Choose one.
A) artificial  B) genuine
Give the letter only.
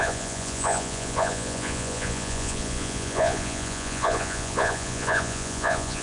A